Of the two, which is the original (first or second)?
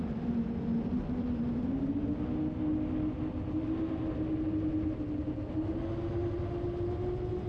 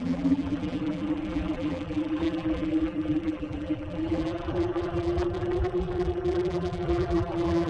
first